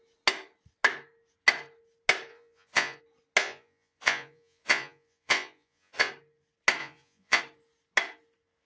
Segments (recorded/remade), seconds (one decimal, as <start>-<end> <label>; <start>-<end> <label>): 0.0-2.3 recorded; 2.3-3.0 remade; 3.0-3.4 recorded; 3.4-6.1 remade; 6.1-6.8 recorded; 6.8-7.4 remade; 7.4-8.7 recorded